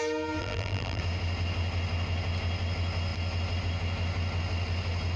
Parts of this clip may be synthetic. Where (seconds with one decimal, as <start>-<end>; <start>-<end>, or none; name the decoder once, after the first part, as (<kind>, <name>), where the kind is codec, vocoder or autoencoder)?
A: 0.4-1.0 (vocoder, BigVGAN v2)